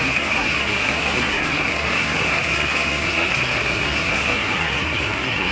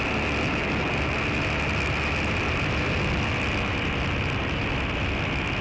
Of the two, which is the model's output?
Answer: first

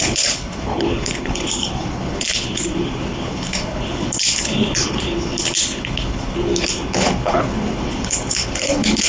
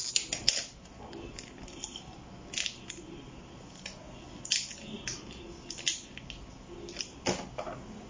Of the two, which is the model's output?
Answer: first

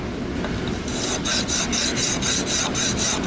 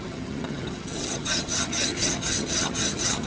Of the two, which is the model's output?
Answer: second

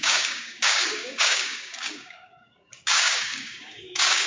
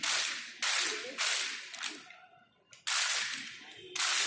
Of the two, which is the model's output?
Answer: first